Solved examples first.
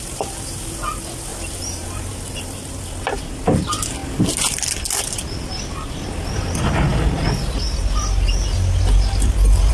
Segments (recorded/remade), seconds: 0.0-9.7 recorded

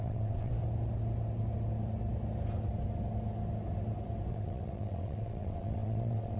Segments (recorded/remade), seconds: 0.0-0.5 remade; 0.5-4.3 recorded; 4.3-6.4 remade